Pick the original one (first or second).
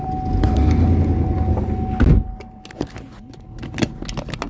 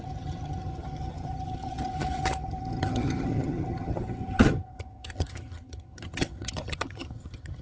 first